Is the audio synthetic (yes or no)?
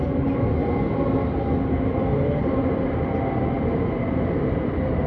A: no